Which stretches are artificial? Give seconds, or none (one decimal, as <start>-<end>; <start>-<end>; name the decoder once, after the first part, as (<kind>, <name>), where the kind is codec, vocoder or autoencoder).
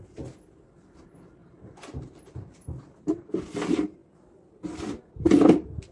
1.4-3.2 (vocoder, BigVGAN v2)